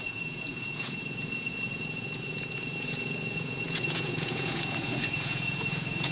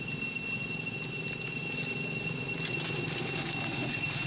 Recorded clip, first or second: second